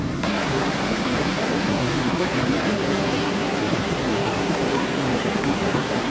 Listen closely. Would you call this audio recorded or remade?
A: remade